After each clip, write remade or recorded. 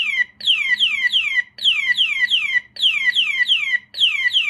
recorded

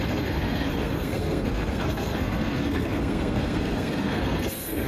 remade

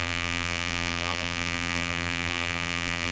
remade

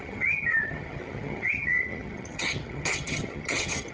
remade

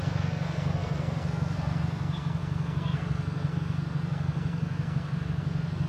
remade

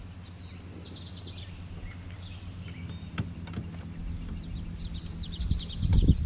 recorded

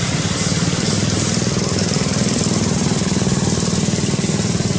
remade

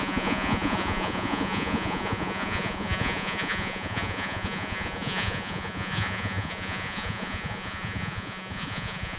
remade